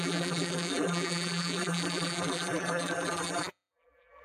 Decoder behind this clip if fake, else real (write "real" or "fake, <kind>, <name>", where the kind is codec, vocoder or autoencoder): fake, vocoder, BigVGAN v2